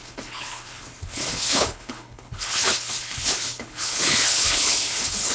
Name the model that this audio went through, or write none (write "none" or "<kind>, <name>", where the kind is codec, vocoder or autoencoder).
codec, HILCodec